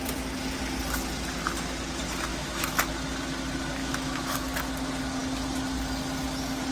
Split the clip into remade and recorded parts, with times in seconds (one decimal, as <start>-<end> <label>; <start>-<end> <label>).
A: 0.0-2.3 recorded; 2.3-2.8 remade; 2.8-3.8 recorded; 3.8-4.4 remade; 4.4-6.7 recorded